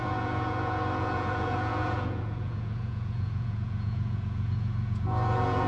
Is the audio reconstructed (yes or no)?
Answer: yes